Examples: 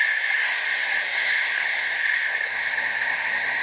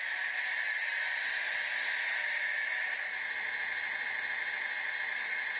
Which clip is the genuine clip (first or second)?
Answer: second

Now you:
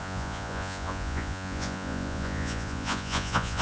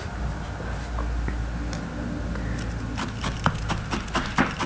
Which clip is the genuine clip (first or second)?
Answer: second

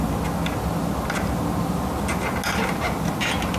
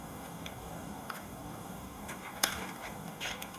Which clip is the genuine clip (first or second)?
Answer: first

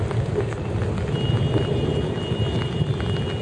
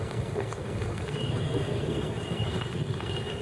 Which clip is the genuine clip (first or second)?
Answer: first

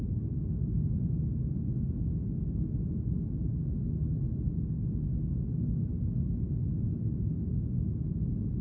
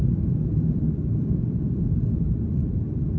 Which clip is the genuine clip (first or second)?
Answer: first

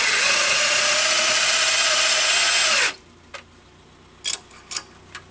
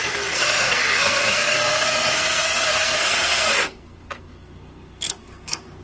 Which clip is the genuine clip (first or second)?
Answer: first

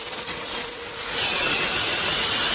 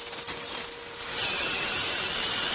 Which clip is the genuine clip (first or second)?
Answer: second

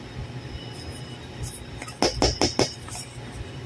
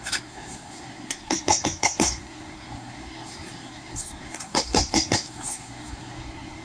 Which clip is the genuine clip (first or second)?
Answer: first